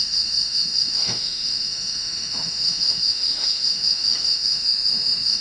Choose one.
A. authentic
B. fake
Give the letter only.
B